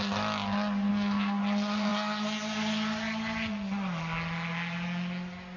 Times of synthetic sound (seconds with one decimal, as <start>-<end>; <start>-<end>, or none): 0.9-1.4